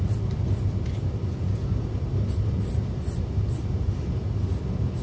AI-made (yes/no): no